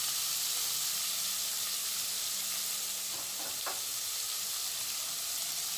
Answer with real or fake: fake